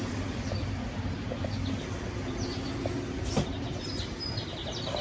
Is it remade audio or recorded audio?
remade